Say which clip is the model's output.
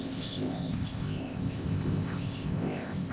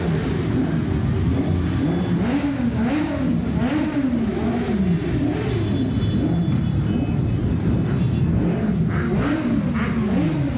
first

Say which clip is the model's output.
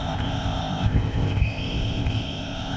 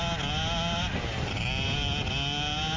first